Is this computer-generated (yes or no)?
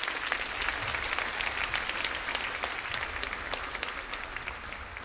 no